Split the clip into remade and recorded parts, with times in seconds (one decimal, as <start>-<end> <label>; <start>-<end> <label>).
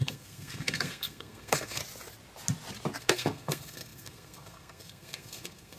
0.0-1.8 remade; 1.8-3.0 recorded; 3.0-5.8 remade